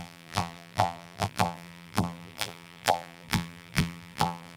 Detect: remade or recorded remade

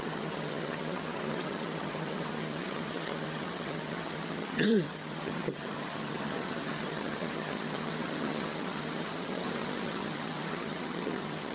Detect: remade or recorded remade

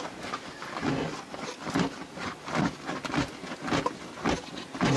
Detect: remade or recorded recorded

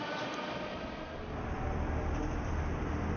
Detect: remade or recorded recorded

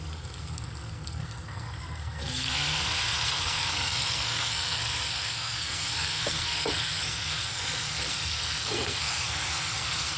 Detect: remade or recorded remade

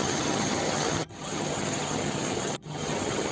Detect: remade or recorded remade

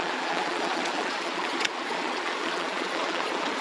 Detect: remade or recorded remade